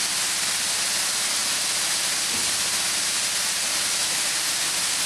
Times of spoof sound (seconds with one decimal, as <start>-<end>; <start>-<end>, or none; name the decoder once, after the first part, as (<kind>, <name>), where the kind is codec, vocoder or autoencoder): none